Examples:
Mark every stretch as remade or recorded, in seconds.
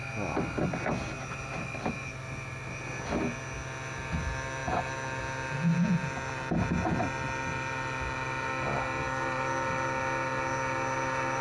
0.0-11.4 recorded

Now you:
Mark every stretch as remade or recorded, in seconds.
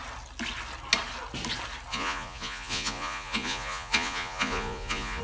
0.0-1.9 recorded; 1.9-5.2 remade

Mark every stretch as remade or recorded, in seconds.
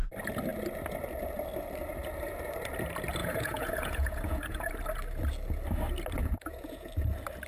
0.0-3.2 recorded; 3.2-4.7 remade; 4.7-6.2 recorded; 6.2-6.9 remade; 6.9-7.5 recorded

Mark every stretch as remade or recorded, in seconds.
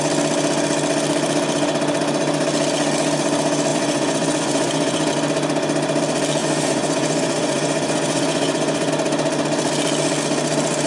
0.0-3.7 recorded; 3.7-5.1 remade; 5.1-6.4 recorded; 6.4-8.9 remade; 8.9-10.9 recorded